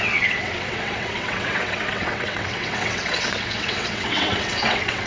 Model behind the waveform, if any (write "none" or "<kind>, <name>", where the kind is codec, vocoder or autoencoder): vocoder, WaveNeXt